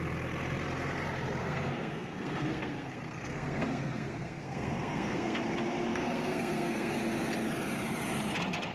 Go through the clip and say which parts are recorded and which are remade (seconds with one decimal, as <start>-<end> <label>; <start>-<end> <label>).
0.0-1.4 recorded; 1.4-5.4 remade; 5.4-5.9 recorded; 5.9-6.9 remade; 6.9-8.7 recorded